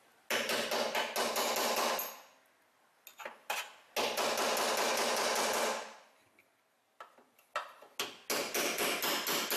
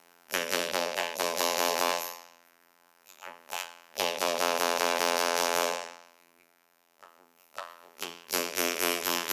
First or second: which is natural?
first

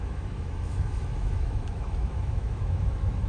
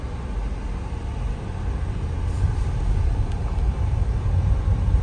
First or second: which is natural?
second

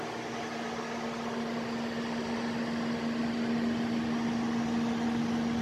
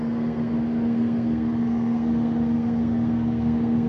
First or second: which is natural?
first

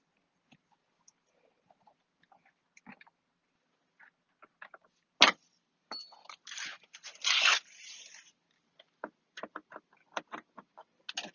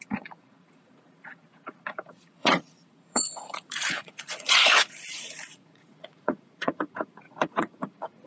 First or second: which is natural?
first